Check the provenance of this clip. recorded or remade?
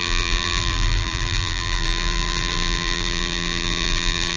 remade